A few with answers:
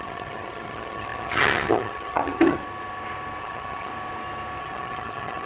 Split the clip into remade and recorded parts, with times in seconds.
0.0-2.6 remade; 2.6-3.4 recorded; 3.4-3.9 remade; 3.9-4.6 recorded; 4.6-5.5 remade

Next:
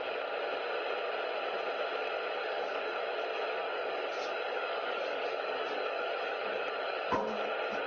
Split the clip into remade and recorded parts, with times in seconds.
0.0-2.4 recorded; 2.4-3.1 remade; 3.1-3.6 recorded; 3.6-7.2 remade; 7.2-7.9 recorded

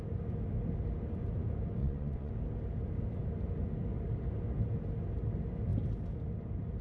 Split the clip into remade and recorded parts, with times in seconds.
0.0-1.8 recorded; 1.8-2.3 remade; 2.3-6.8 recorded

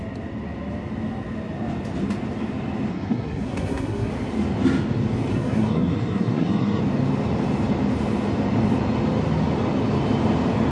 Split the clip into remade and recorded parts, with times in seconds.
0.0-2.9 recorded; 2.9-4.1 remade; 4.1-5.3 recorded; 5.3-6.8 remade; 6.8-10.7 recorded